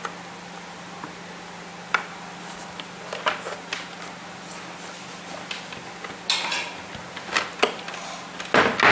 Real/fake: real